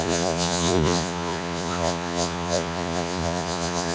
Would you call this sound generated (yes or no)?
yes